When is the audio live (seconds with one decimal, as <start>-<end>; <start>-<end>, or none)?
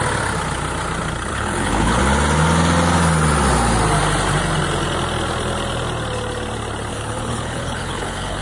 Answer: 0.0-1.3; 2.0-6.9